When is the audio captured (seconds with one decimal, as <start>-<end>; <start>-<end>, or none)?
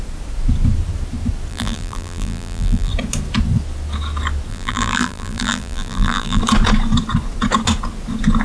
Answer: 0.0-1.5; 2.9-4.5; 6.4-8.4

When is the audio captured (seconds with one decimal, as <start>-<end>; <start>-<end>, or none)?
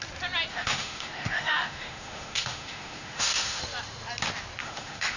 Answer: 0.0-0.5; 3.6-4.6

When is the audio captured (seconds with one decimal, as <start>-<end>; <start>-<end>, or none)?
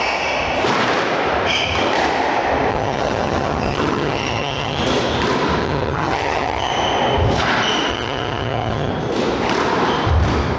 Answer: 0.0-2.7; 4.8-5.6; 6.7-7.9; 8.9-10.6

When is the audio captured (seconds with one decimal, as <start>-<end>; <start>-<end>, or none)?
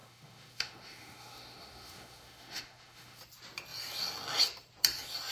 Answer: 3.2-5.3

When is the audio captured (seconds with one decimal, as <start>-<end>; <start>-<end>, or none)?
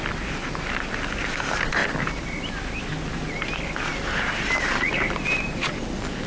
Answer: 0.0-6.3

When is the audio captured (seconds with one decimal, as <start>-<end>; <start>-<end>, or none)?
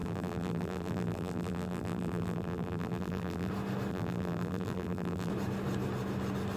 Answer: 3.5-3.9; 5.3-6.6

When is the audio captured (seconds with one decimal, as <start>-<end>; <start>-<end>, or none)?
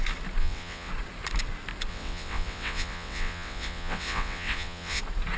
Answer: 0.0-0.4; 0.9-1.9; 5.0-5.4